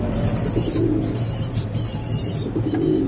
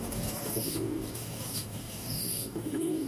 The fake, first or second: second